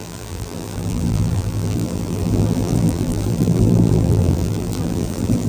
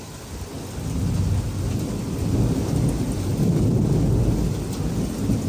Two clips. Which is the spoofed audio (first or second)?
first